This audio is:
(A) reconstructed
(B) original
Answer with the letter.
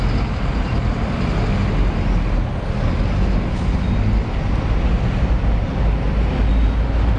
B